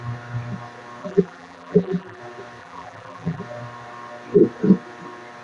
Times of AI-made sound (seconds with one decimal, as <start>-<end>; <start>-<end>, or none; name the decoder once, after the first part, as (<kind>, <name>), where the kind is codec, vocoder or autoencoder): 1.0-2.2 (vocoder, BigVGAN v2); 2.6-3.4